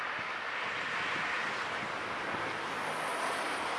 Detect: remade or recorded recorded